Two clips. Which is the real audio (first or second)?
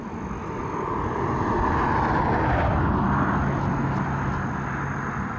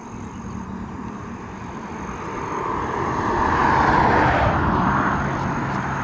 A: first